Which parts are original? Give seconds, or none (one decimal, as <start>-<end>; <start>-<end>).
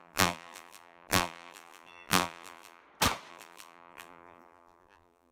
2.8-3.3